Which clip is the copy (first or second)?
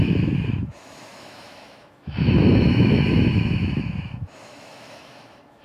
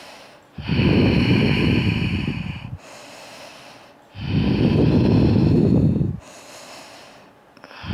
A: first